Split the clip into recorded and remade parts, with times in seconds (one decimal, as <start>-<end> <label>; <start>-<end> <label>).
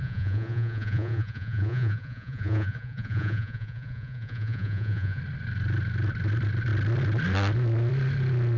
0.0-5.2 remade; 5.2-8.6 recorded